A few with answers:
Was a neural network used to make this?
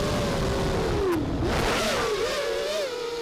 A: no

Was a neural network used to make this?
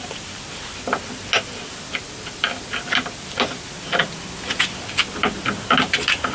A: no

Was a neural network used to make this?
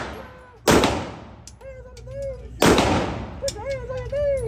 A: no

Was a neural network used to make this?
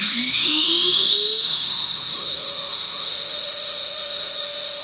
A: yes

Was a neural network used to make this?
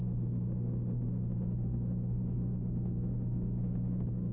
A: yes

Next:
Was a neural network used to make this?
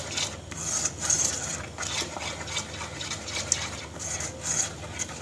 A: no